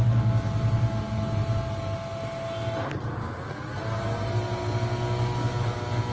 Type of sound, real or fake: real